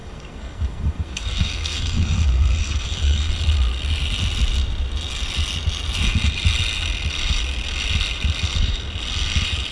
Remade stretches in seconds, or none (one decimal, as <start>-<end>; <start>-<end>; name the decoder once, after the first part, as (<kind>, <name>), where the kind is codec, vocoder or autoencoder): 0.0-3.3 (codec, SNAC)